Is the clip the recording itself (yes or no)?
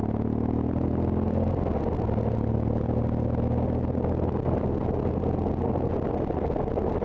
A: yes